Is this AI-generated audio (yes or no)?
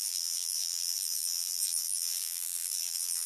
yes